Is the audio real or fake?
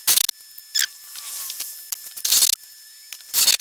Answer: real